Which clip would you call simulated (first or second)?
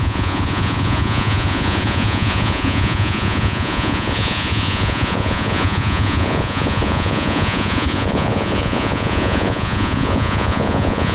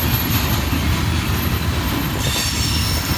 first